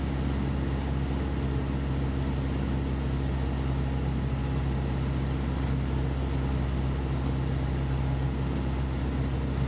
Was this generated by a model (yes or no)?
no